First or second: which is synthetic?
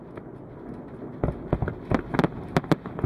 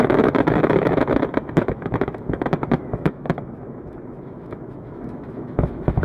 second